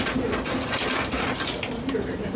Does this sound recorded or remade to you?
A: recorded